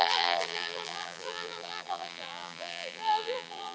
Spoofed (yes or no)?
yes